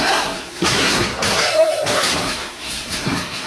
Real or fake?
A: fake